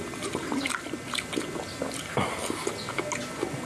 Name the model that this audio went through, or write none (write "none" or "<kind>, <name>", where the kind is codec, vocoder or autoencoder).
none